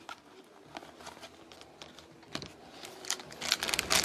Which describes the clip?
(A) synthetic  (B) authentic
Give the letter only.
B